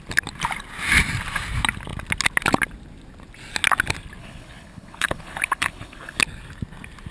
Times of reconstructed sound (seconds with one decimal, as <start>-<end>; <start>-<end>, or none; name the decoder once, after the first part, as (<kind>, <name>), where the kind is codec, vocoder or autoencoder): 4.2-6.2 (codec, HILCodec)